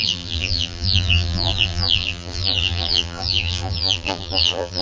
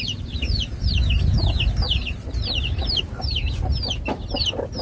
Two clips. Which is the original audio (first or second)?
second